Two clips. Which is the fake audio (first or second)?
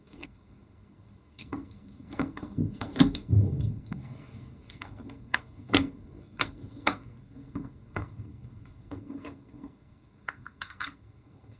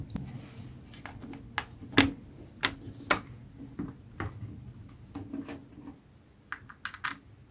first